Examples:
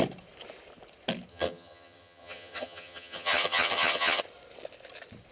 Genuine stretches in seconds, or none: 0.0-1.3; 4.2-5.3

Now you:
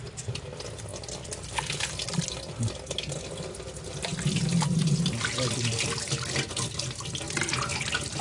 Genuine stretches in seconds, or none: 0.0-8.2

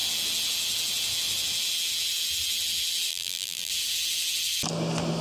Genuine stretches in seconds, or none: 0.0-3.1; 3.7-5.2

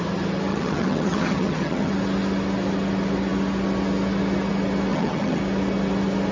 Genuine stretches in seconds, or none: 0.0-0.5; 1.9-4.9; 5.4-6.3

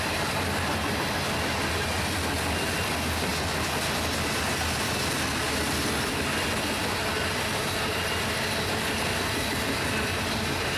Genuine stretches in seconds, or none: 0.0-10.8

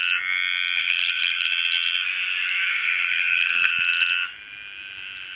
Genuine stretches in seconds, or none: 0.0-0.8; 1.5-2.7; 3.7-5.4

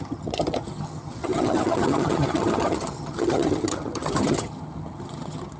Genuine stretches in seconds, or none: none

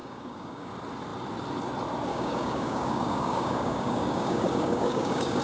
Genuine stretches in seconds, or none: 0.7-2.1